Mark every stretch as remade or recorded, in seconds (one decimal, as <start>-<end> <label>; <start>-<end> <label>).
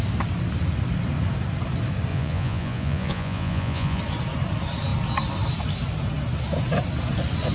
0.0-2.1 recorded; 2.1-4.0 remade; 4.0-7.5 recorded